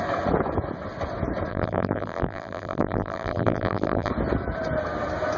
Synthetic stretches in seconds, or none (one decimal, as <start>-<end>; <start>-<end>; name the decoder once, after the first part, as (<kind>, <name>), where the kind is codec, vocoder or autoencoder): 1.5-4.1 (vocoder, BigVGAN v2)